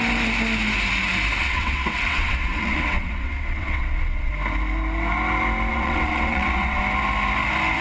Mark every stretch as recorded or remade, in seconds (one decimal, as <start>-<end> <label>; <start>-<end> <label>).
0.0-1.4 recorded; 1.4-4.3 remade; 4.3-5.7 recorded; 5.7-6.8 remade; 6.8-7.8 recorded